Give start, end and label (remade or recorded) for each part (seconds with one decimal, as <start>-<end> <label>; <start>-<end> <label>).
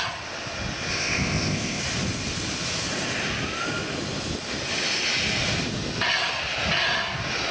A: 0.0-0.9 recorded; 0.9-1.8 remade; 1.8-7.5 recorded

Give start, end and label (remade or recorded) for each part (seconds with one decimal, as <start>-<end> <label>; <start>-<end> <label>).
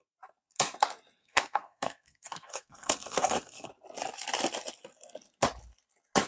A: 0.0-1.2 recorded; 1.2-3.7 remade; 3.7-6.3 recorded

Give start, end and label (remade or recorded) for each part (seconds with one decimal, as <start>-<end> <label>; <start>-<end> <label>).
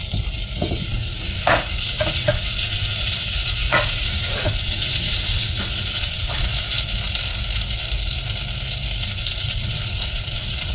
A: 0.0-0.6 recorded; 0.6-6.5 remade; 6.5-9.0 recorded; 9.0-10.7 remade